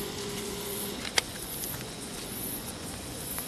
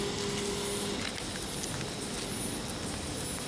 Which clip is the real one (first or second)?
second